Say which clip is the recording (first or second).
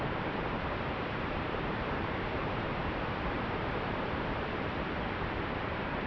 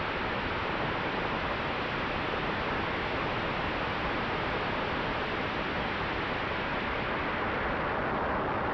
second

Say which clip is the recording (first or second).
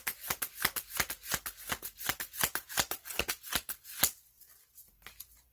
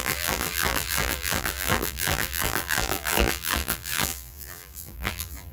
first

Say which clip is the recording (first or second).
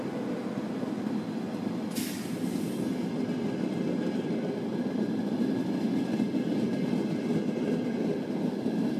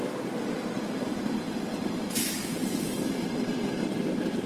first